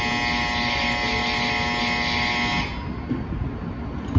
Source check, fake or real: real